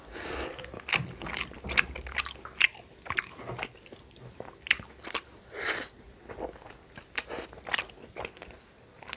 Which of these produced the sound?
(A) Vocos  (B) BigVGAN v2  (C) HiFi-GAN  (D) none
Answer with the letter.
D